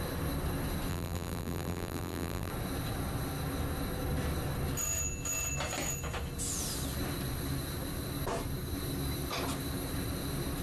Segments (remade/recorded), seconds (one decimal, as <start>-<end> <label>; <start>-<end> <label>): 0.0-0.9 recorded; 0.9-2.5 remade; 2.5-10.6 recorded